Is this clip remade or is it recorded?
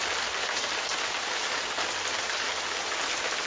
recorded